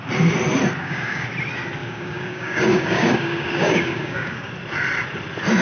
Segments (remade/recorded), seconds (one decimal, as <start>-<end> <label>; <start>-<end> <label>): 0.0-0.8 recorded; 0.8-1.3 remade; 1.3-1.8 recorded; 1.8-4.5 remade; 4.5-5.6 recorded